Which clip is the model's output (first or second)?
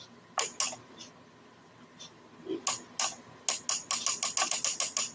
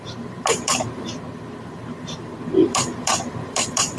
second